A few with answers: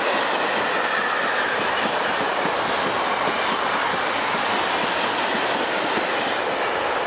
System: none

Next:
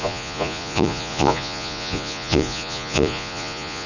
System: vocoder, Vocos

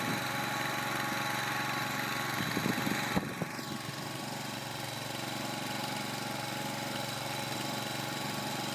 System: none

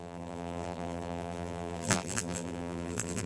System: vocoder, BigVGAN v2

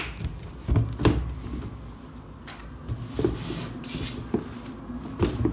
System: none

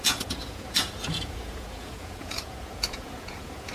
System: vocoder, Vocos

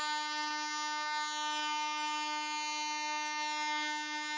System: none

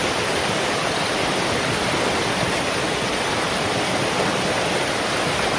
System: none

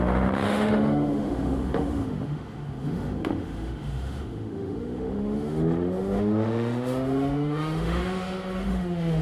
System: autoencoder, DAC-VAE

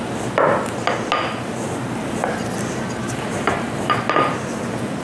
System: none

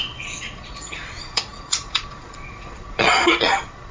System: vocoder, Vocos